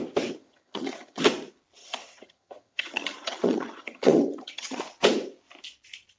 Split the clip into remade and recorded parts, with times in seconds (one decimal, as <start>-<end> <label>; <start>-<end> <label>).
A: 0.0-0.4 recorded; 0.4-1.2 remade; 1.2-1.8 recorded; 1.8-4.8 remade; 4.8-6.2 recorded